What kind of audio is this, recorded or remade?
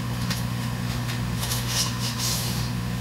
remade